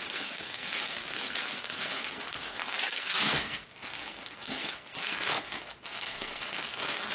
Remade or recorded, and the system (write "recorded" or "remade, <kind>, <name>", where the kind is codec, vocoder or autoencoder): remade, codec, SNAC